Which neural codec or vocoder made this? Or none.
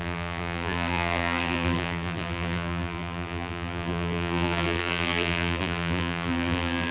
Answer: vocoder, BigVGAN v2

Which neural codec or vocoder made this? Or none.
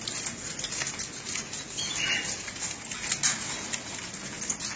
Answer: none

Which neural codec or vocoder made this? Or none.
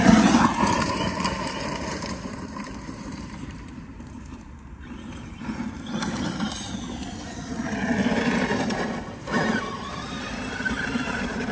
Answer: vocoder, BigVGAN v2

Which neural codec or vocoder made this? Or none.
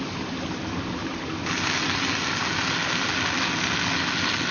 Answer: none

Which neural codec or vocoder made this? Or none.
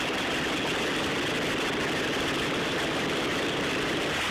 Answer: vocoder, BigVGAN v2